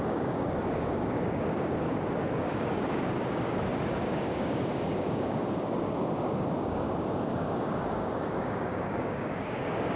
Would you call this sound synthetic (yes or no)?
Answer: yes